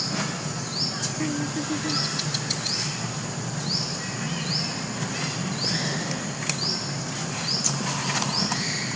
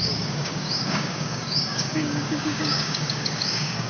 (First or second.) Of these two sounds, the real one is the first